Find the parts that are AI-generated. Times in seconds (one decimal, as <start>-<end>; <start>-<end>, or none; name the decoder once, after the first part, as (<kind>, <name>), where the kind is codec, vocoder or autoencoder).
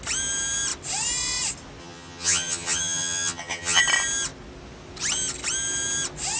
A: 1.8-3.8 (vocoder, HiFi-GAN)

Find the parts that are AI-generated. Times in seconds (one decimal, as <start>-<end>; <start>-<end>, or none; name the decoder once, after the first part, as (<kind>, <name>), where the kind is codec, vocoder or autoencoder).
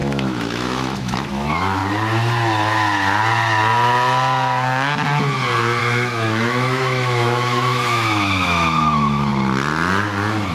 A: 0.0-1.8 (autoencoder, DAC-VAE); 5.8-9.3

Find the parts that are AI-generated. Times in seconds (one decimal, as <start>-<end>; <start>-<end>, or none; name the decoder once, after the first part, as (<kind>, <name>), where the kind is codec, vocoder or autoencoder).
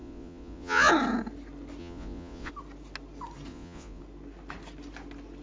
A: 0.0-0.9 (vocoder, Vocos); 1.8-2.5; 3.5-4.0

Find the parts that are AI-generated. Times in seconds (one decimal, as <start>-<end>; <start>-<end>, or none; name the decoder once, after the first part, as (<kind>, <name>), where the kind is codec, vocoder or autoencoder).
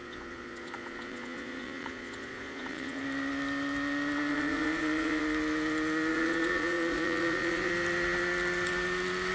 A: 0.0-3.0 (vocoder, Vocos); 4.3-5.2; 6.1-7.7